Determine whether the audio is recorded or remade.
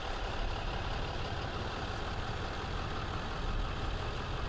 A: recorded